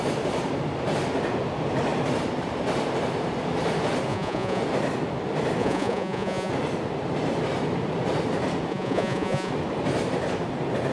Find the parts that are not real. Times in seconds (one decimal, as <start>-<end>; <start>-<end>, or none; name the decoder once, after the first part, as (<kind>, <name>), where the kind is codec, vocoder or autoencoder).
4.1-4.6 (vocoder, Vocos); 5.6-6.5; 8.7-9.5

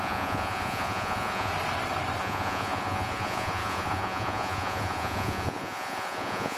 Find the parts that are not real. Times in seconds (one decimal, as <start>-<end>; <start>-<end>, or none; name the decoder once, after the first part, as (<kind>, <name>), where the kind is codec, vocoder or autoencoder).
0.0-1.5 (vocoder, Vocos); 2.2-6.6

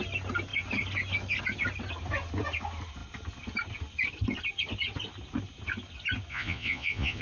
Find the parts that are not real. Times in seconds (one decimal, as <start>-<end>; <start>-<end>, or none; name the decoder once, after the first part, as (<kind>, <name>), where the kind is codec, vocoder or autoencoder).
6.3-7.2 (vocoder, Vocos)

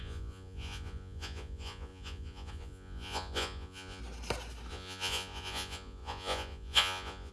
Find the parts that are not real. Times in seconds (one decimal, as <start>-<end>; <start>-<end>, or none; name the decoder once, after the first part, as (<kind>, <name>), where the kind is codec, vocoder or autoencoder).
0.0-4.0 (vocoder, Vocos); 4.7-7.3

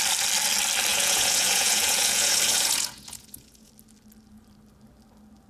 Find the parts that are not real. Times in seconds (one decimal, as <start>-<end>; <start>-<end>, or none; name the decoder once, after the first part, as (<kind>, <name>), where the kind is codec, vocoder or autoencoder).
0.9-3.7 (vocoder, Vocos)